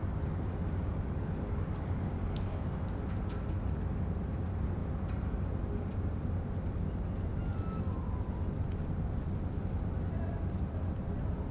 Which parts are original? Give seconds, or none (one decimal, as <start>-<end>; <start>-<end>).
0.0-0.9; 2.7-11.5